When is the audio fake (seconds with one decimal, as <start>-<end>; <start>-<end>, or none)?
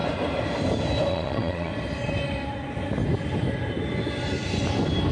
1.1-1.7